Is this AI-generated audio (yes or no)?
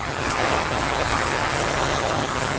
yes